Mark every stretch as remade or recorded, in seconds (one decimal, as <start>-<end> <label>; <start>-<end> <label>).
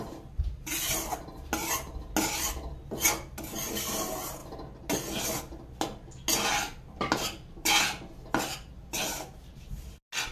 0.0-10.3 recorded